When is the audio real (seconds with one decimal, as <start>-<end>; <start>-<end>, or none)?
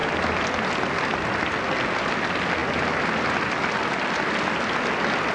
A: 0.0-5.3